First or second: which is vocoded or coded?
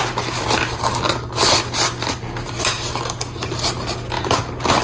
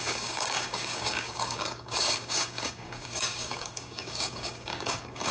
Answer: second